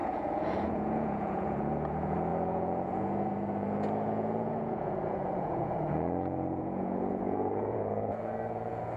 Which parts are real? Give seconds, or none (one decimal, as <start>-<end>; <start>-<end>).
none